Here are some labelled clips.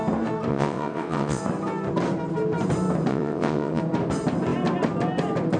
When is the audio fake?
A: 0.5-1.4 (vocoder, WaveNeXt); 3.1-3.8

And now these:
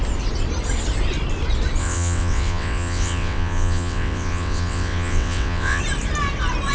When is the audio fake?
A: 1.8-5.8 (vocoder, WaveNeXt)